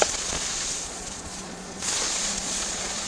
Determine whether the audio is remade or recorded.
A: remade